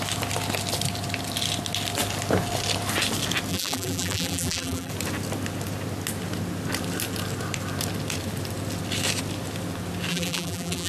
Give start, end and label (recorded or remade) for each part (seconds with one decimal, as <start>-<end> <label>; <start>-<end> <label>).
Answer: 0.0-3.5 recorded; 3.5-4.9 remade; 4.9-10.1 recorded; 10.1-10.9 remade